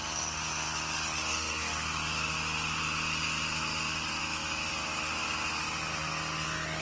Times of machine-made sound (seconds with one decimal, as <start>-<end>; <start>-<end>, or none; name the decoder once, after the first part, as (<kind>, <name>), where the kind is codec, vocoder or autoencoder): 4.2-4.7 (autoencoder, DAC-VAE)